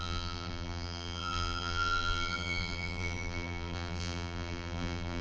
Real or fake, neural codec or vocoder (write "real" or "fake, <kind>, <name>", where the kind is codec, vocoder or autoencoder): fake, vocoder, BigVGAN v2